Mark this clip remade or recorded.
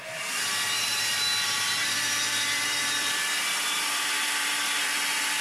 remade